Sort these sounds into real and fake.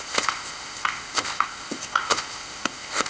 fake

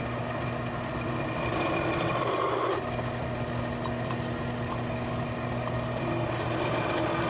real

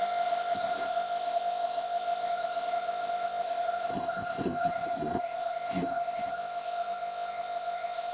fake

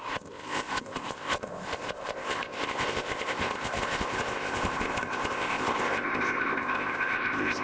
fake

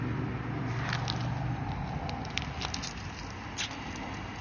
real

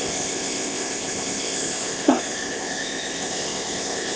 fake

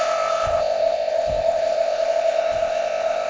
fake